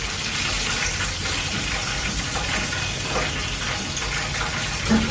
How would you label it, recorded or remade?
recorded